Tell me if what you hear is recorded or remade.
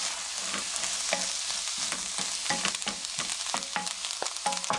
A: recorded